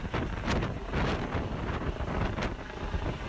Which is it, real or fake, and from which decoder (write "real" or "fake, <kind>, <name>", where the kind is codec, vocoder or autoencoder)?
real